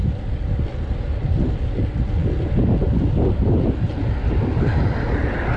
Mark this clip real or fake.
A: real